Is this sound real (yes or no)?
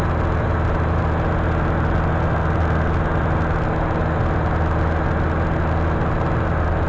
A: yes